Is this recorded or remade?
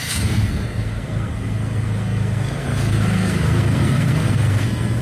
remade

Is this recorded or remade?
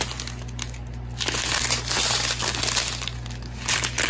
recorded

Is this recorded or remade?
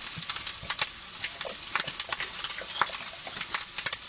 recorded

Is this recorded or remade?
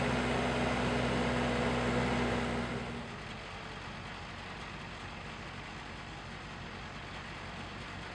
recorded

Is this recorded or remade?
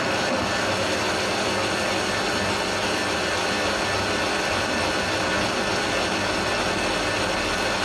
recorded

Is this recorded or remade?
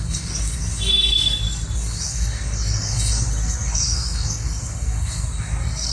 remade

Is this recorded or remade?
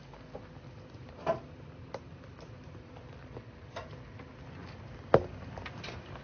recorded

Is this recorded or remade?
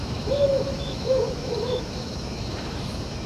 remade